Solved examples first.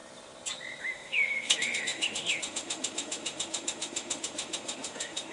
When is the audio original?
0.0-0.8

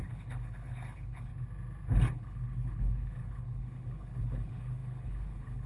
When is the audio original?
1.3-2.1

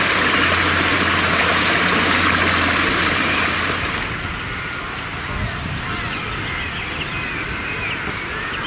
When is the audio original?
0.0-0.9; 1.5-8.7

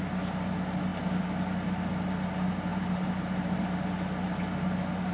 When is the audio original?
0.0-2.7; 3.6-5.1